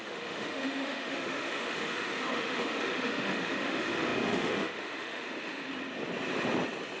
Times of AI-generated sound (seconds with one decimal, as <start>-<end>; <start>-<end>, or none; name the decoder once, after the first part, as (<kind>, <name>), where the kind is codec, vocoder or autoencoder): 0.0-5.7 (autoencoder, DAC-VAE)